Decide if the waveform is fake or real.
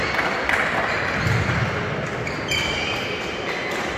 real